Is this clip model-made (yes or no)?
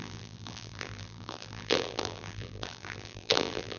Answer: yes